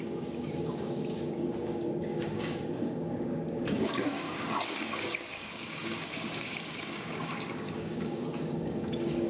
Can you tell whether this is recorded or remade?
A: remade